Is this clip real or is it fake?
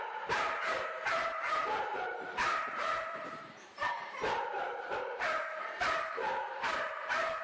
fake